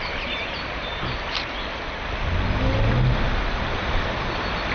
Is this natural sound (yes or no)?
yes